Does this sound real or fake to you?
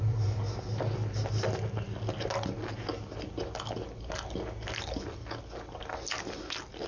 real